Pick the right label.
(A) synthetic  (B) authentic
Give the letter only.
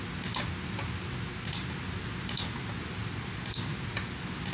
B